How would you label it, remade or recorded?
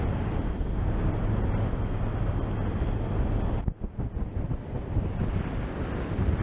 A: recorded